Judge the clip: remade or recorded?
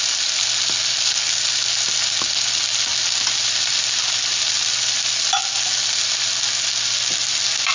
recorded